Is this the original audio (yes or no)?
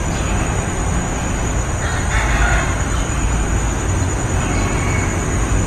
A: yes